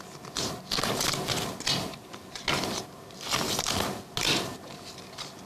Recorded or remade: recorded